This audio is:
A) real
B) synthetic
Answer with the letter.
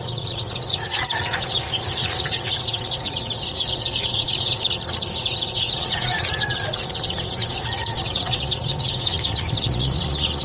B